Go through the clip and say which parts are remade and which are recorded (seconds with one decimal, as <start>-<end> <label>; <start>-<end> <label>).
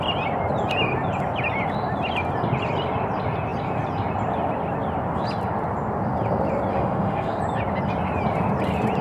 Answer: 0.0-6.7 recorded; 6.7-7.4 remade; 7.4-9.0 recorded